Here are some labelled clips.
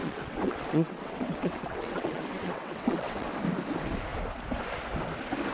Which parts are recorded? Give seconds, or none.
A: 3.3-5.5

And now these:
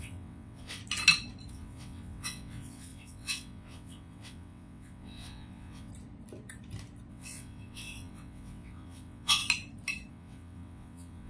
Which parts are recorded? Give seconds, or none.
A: 0.8-1.5; 5.9-7.1; 9.4-10.1

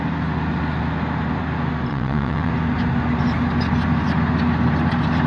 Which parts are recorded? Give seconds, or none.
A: 0.0-1.9; 2.5-5.3

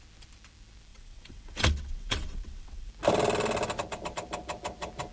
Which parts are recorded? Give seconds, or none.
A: 0.0-0.9; 2.9-5.1

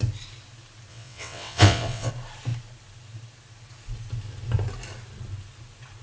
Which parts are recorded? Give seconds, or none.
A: 0.0-0.9; 2.1-6.0